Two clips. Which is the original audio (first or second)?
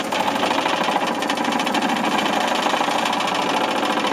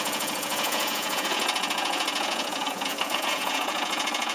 first